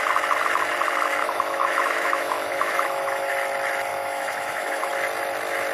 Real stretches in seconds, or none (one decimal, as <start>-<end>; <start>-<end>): 0.0-1.2; 3.3-3.9; 4.9-5.7